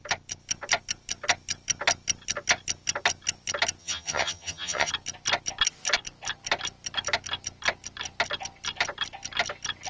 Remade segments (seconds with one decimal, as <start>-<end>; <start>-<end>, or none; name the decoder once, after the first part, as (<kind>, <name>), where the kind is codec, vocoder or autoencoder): 3.8-4.9 (vocoder, HiFi-GAN)